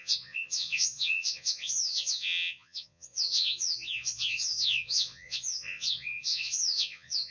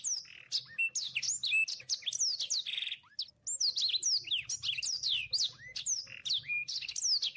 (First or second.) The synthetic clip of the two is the first